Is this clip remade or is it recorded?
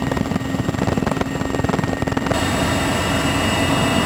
recorded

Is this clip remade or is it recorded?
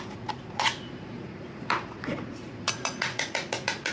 remade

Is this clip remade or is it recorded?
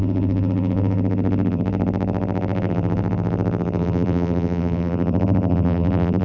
remade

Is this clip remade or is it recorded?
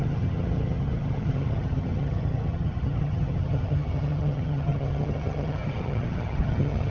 remade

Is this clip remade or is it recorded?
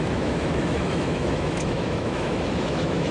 remade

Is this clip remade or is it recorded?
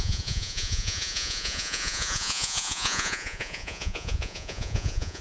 remade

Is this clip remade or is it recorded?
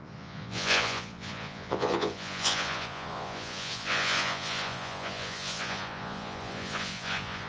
remade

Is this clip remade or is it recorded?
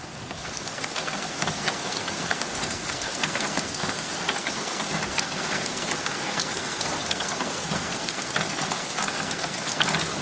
remade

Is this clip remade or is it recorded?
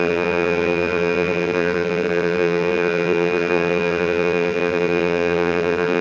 remade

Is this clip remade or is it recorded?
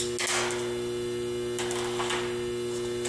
recorded